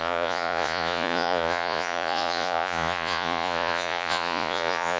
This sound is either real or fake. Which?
fake